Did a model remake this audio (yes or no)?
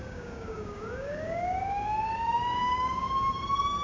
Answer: yes